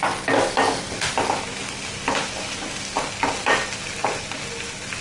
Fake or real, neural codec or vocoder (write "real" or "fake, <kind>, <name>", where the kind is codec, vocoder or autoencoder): real